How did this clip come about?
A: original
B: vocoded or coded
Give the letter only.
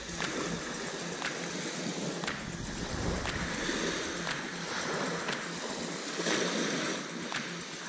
A